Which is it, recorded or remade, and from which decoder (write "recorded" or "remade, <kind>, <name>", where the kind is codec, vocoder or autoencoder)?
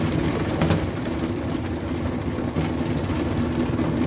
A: recorded